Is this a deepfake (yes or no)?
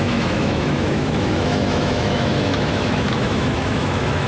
yes